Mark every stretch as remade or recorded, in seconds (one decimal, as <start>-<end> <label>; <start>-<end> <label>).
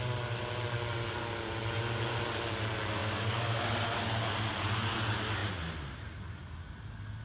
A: 0.0-3.0 recorded; 3.0-3.6 remade; 3.6-7.2 recorded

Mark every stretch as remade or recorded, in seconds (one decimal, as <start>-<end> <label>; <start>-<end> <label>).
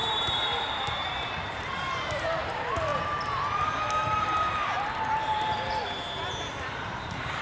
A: 0.0-2.9 remade; 2.9-4.2 recorded; 4.2-5.8 remade; 5.8-6.5 recorded; 6.5-7.4 remade